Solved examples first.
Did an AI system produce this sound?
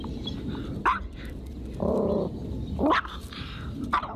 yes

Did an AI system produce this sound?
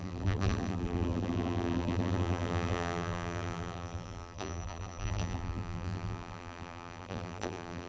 yes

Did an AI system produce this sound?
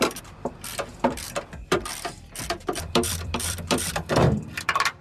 yes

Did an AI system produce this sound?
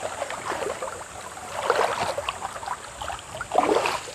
yes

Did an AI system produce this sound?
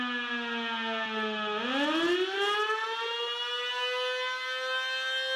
no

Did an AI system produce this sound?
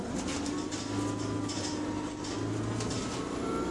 no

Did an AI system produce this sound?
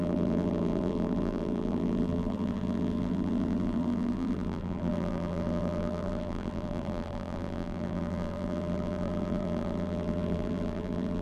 yes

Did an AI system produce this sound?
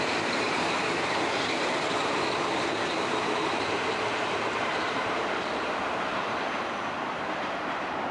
yes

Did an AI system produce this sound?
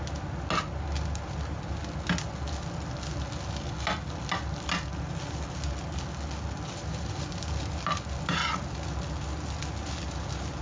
no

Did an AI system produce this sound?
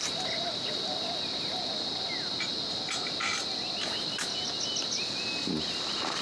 no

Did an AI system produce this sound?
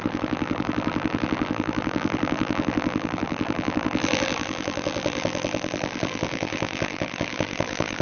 yes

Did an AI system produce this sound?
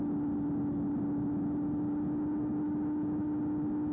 no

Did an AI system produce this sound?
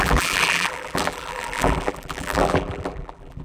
yes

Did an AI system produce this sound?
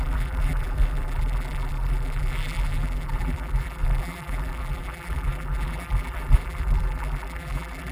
yes